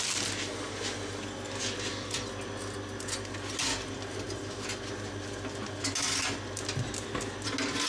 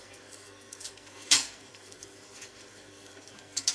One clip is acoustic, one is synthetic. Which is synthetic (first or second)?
second